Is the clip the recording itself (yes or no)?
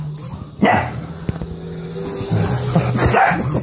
yes